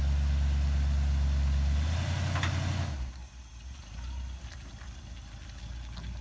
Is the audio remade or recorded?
recorded